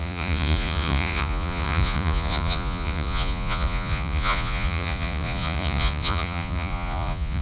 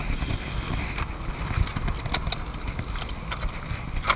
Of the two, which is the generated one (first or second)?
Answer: first